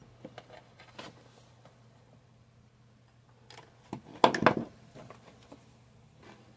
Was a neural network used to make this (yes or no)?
no